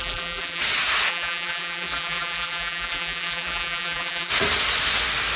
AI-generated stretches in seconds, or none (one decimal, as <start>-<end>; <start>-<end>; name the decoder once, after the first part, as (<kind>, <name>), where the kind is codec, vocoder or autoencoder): 0.0-0.6 (vocoder, BigVGAN v2); 1.1-4.3